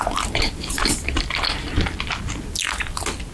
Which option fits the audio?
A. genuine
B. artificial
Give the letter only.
A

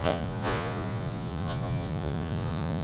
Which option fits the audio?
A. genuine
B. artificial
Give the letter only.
B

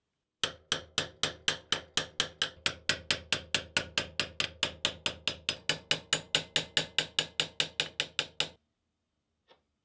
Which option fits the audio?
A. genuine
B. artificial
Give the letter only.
A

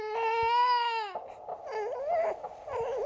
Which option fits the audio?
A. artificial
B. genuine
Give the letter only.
B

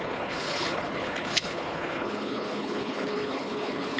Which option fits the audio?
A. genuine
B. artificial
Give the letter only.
B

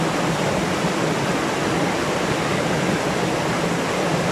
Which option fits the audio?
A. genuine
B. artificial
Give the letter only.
A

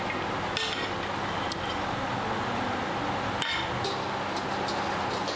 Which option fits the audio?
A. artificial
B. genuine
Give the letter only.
B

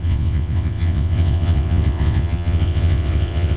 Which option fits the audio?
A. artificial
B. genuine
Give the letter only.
A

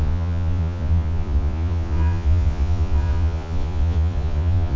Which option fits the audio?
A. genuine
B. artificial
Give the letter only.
B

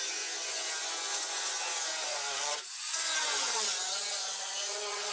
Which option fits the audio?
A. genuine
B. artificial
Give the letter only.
B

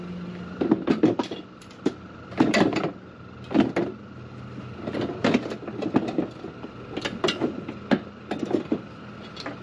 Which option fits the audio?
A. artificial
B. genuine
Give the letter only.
B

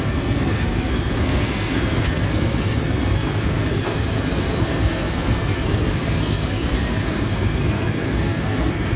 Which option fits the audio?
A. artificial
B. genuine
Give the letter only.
A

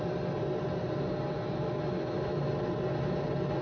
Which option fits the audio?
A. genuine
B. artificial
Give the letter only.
A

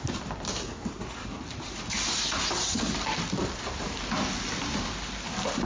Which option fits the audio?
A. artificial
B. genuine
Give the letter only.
B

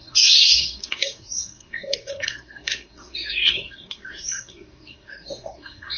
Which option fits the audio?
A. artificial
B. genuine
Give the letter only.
A